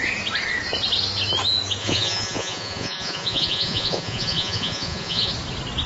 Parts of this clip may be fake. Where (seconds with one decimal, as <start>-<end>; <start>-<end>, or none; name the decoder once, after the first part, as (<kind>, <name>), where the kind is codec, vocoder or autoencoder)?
1.8-5.3 (vocoder, Vocos)